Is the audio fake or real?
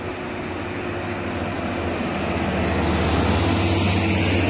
real